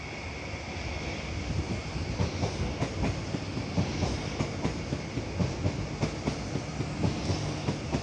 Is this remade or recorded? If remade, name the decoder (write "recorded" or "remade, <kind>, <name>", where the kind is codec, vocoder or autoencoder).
recorded